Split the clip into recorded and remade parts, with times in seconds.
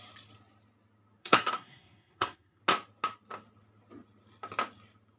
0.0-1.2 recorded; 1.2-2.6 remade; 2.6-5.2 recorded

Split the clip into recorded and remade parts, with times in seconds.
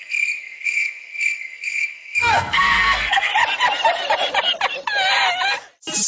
0.0-3.3 remade; 3.3-6.1 recorded